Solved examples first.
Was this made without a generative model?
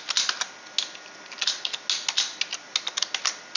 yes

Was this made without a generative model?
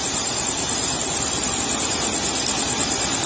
yes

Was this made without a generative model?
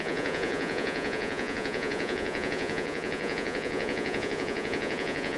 no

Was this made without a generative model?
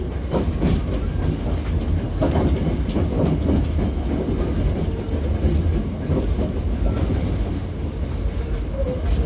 yes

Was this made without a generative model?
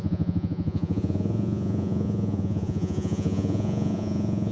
no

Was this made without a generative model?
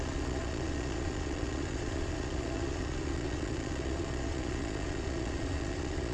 no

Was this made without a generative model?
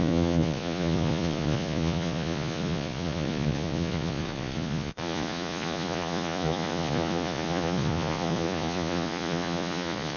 no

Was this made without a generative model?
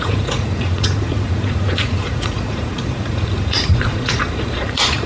no